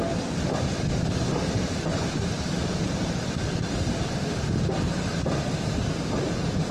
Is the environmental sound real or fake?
real